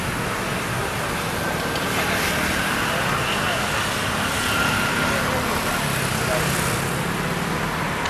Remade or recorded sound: recorded